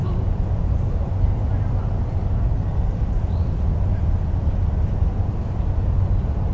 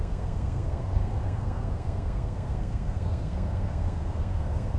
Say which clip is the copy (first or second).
second